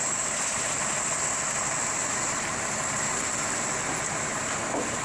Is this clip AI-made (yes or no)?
no